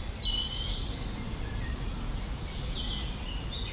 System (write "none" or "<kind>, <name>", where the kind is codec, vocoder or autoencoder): none